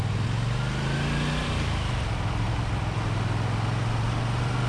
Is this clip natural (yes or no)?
yes